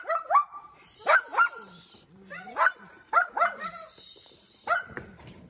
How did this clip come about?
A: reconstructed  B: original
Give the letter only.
A